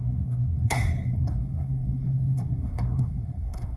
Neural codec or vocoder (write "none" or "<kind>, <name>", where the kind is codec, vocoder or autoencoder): codec, SNAC